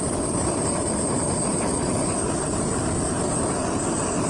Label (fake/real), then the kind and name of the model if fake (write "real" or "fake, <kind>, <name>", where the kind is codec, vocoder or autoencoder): fake, vocoder, BigVGAN v2